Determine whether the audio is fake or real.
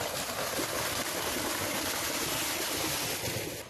real